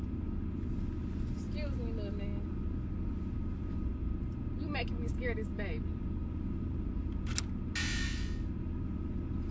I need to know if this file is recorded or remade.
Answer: recorded